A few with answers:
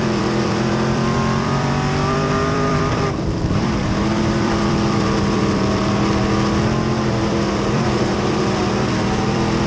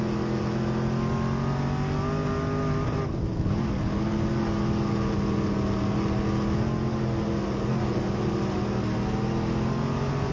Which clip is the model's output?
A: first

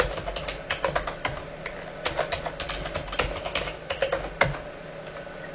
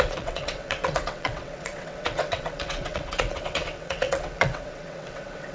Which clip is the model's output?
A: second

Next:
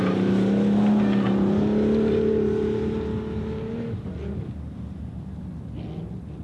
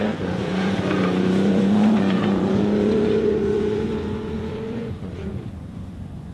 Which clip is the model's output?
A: second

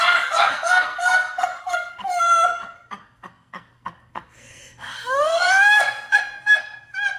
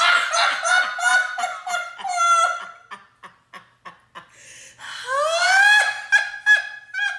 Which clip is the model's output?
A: first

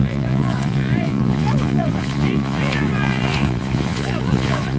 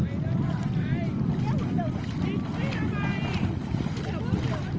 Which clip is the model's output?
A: first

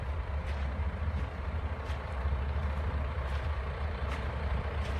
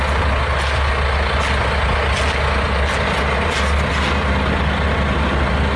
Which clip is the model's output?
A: first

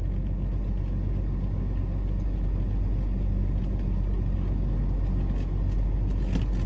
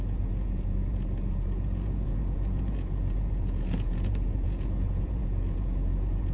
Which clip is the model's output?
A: second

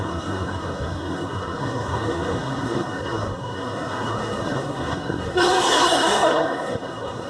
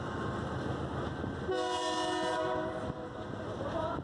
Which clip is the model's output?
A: first